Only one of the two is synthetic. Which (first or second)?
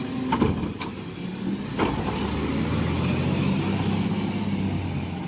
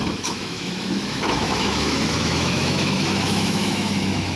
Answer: second